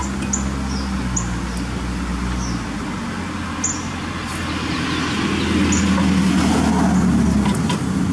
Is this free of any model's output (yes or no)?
yes